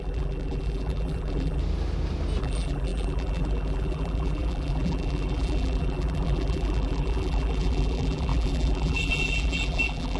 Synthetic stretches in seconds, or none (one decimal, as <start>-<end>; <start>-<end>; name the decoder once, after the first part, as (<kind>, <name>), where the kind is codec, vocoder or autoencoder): 0.0-1.6 (vocoder, BigVGAN v2); 2.4-10.2